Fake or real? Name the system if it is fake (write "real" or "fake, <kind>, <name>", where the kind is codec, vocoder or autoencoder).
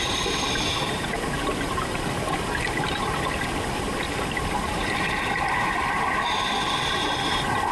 real